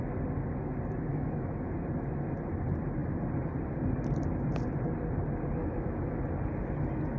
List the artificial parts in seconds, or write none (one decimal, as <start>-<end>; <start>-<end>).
1.1-1.7; 5.6-6.2